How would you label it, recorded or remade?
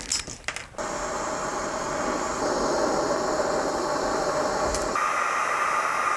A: recorded